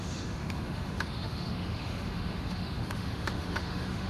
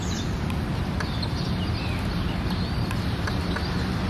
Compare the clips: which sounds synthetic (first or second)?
first